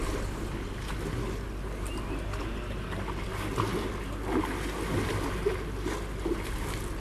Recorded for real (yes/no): yes